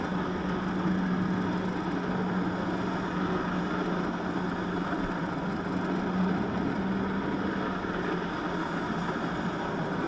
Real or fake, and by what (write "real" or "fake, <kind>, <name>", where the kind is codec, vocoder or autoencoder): real